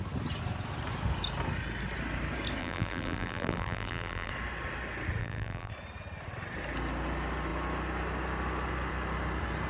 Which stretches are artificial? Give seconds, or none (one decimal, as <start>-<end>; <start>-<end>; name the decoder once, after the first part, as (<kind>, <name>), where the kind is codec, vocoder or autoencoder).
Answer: 2.6-4.3 (vocoder, BigVGAN v2); 5.2-5.7